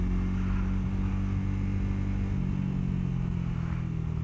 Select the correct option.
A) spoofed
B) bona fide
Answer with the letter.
B